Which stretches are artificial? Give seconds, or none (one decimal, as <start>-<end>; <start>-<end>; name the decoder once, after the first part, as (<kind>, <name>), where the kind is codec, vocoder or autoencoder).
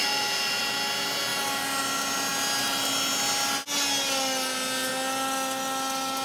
0.0-0.6 (vocoder, BigVGAN v2)